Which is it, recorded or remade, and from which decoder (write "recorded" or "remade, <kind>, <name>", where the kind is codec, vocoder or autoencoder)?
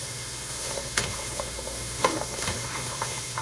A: remade, autoencoder, DAC-VAE